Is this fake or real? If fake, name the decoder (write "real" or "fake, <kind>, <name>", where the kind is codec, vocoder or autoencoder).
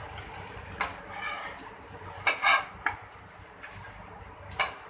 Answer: real